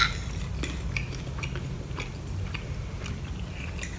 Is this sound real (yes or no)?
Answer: yes